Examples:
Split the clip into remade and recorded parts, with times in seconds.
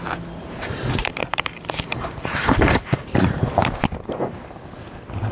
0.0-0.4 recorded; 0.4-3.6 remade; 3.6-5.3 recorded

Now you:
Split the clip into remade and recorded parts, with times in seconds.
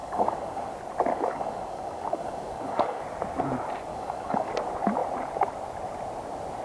0.0-0.7 remade; 0.7-1.1 recorded; 1.1-3.0 remade; 3.0-3.9 recorded; 3.9-4.5 remade; 4.5-6.6 recorded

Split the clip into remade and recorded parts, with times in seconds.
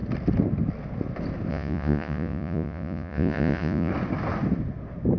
0.0-1.5 recorded; 1.5-3.9 remade; 3.9-5.2 recorded